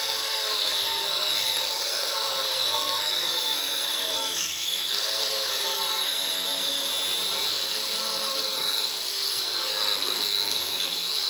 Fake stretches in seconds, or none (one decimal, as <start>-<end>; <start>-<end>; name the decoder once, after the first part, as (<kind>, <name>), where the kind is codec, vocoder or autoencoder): 0.0-6.9 (codec, SNAC); 7.5-11.3